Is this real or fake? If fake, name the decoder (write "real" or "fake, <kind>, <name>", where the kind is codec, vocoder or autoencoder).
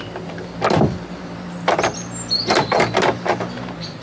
real